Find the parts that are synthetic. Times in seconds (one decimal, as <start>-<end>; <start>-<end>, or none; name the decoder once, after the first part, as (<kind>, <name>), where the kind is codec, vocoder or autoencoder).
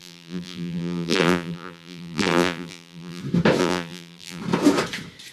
0.0-3.2 (vocoder, BigVGAN v2); 3.6-4.4